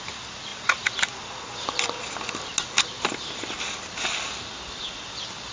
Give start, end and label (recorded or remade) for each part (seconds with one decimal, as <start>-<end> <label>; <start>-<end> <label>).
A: 0.0-5.5 recorded